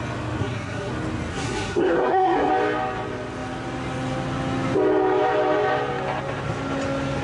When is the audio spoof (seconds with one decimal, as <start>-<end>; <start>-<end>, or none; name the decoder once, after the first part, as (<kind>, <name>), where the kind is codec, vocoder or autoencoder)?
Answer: 0.4-0.9 (codec, SNAC); 1.3-2.5